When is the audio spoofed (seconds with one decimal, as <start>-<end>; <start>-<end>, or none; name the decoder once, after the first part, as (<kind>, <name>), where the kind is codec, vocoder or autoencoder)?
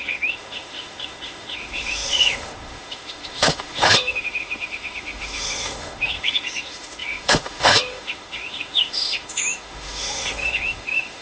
0.0-11.2 (autoencoder, DAC-VAE)